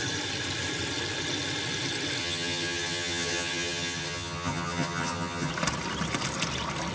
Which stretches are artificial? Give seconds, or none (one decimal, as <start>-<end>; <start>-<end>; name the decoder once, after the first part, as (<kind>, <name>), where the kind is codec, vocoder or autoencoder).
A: 2.2-5.5 (vocoder, HiFi-GAN)